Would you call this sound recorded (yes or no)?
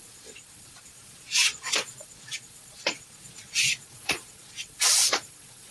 no